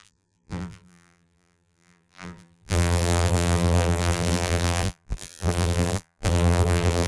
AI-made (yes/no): yes